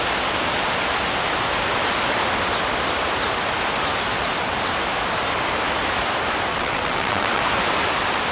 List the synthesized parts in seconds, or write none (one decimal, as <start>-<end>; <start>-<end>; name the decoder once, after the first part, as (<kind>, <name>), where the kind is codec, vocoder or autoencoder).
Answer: 6.5-7.4 (vocoder, WaveNeXt)